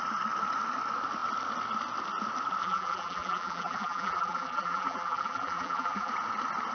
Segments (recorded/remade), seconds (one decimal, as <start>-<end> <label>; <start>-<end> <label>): 0.0-2.6 recorded; 2.6-6.1 remade; 6.1-6.7 recorded